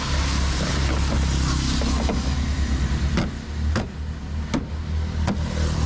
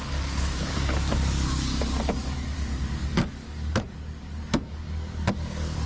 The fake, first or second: second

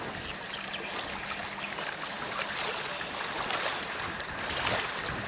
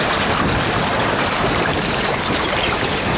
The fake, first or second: second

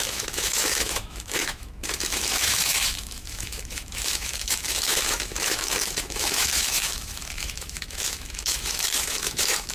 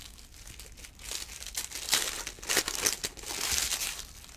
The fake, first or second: first